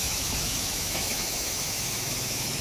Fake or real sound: fake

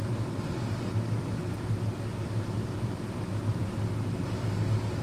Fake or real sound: real